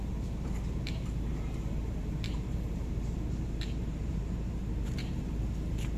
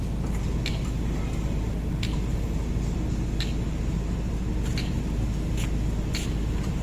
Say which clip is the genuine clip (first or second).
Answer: second